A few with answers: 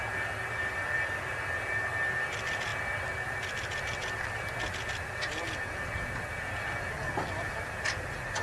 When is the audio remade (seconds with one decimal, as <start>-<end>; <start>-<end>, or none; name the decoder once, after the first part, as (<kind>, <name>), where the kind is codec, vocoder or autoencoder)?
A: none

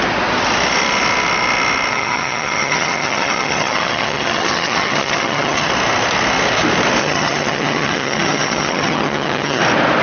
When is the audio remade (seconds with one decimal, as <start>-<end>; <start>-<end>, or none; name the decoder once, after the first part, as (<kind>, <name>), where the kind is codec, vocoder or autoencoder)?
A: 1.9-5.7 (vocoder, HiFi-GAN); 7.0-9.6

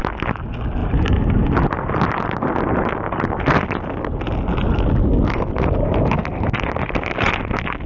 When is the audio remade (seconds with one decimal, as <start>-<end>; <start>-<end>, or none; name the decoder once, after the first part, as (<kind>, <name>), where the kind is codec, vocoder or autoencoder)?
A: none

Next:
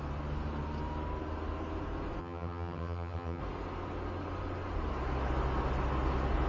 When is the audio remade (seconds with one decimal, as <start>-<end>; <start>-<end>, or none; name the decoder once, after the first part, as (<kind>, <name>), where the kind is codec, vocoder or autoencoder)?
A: 2.2-3.4 (vocoder, HiFi-GAN)